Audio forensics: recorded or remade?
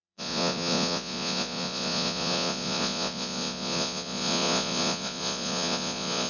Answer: remade